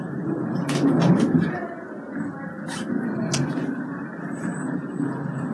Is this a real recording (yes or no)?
yes